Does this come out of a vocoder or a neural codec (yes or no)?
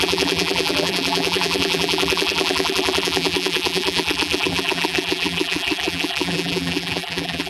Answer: yes